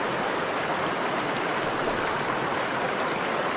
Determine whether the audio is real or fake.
real